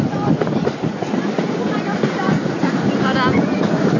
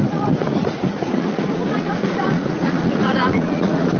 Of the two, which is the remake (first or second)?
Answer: second